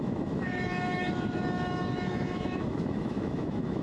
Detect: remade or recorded remade